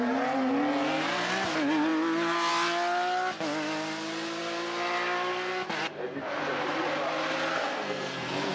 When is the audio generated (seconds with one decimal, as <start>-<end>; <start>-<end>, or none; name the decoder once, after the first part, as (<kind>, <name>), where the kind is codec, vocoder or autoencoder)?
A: 7.5-8.5 (codec, SNAC)